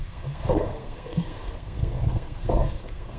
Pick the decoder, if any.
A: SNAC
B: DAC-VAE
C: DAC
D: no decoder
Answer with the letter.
A